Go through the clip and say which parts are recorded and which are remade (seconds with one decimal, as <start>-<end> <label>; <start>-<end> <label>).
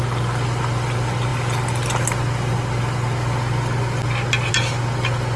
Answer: 0.0-5.4 recorded